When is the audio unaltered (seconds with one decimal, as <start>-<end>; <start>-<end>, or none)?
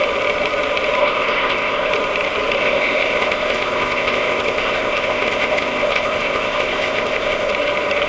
0.0-1.0; 1.9-2.6; 7.5-8.1